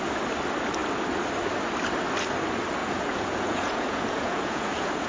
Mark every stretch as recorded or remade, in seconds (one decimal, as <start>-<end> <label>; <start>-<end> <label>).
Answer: 0.0-2.8 recorded; 2.8-5.1 remade